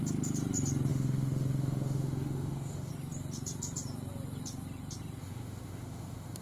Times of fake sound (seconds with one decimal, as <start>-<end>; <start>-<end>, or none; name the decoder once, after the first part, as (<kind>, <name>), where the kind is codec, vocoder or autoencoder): 0.9-2.9 (autoencoder, DAC-VAE); 5.2-6.4